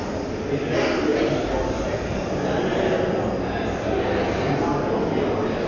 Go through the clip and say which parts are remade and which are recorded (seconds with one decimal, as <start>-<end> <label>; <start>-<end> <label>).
0.0-5.7 recorded